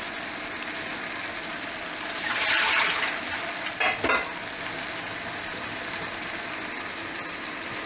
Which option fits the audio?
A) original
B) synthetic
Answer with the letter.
A